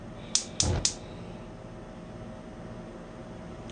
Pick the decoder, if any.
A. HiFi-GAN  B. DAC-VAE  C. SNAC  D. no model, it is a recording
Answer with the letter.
D